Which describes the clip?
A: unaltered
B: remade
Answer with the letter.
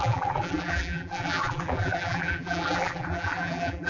B